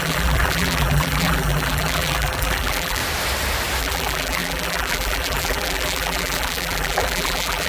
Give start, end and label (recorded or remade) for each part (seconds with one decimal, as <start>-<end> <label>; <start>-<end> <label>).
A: 0.0-3.0 remade; 3.0-3.8 recorded; 3.8-7.7 remade